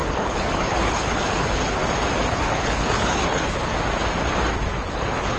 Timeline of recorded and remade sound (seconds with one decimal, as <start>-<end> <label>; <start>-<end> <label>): 0.0-1.8 remade; 1.8-2.3 recorded; 2.3-3.7 remade; 3.7-4.7 recorded; 4.7-5.4 remade